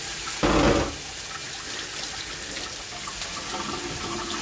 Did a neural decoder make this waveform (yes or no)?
no